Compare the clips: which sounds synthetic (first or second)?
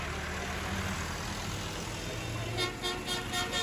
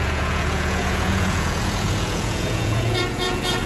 second